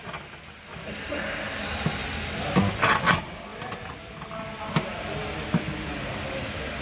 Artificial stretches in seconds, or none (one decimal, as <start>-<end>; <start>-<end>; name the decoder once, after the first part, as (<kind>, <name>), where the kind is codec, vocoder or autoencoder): none